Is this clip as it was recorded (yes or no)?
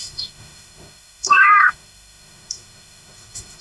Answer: no